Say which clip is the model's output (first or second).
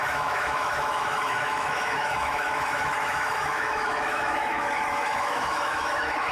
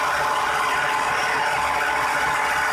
first